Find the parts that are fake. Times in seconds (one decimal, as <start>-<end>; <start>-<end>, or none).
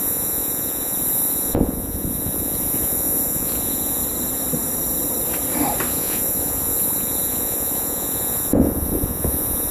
0.0-4.0; 5.9-9.7